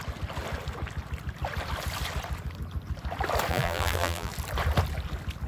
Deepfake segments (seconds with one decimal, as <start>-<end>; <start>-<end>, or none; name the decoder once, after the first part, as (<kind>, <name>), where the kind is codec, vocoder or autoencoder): 3.5-4.3 (vocoder, BigVGAN v2)